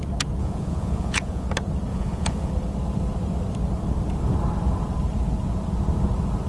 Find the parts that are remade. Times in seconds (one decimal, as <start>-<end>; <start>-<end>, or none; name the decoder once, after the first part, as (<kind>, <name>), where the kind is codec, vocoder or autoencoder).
0.4-1.5 (vocoder, Vocos); 1.9-2.5